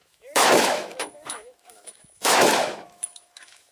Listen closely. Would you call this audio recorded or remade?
remade